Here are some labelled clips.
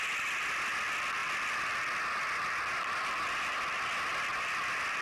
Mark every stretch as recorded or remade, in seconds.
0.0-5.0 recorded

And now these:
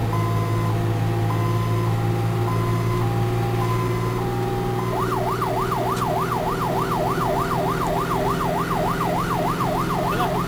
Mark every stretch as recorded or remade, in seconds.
0.0-10.5 recorded